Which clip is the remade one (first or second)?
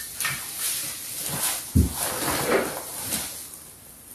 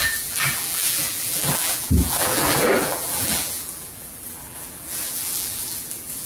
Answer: second